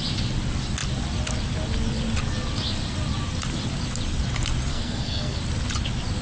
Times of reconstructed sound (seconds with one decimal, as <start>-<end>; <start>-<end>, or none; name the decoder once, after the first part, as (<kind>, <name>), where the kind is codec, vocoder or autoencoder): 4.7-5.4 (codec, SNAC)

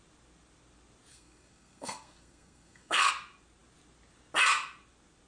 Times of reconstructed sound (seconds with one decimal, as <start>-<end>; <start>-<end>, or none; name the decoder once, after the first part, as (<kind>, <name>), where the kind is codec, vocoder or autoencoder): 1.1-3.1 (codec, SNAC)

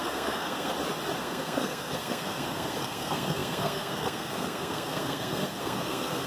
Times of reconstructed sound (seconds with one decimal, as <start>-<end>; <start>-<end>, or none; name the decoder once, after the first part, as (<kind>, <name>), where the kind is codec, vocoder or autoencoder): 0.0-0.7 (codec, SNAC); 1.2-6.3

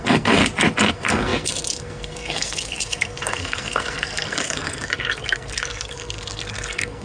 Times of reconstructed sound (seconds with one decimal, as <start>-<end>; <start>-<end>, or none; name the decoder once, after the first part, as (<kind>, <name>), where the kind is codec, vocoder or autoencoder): 0.0-0.4 (codec, SNAC); 0.9-7.0